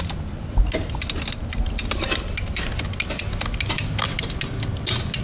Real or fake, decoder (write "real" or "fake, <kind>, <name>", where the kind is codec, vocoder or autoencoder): real